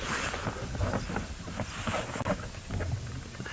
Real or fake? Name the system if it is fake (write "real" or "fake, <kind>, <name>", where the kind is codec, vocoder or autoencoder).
real